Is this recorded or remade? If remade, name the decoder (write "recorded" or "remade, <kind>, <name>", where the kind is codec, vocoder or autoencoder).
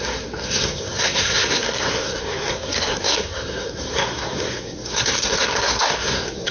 remade, codec, SNAC